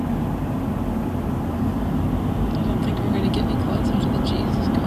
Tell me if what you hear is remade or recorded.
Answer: recorded